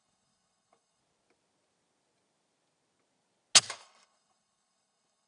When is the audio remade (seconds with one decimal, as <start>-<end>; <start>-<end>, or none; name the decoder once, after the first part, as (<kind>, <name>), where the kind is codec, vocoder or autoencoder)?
0.0-1.0 (codec, HILCodec); 3.8-5.3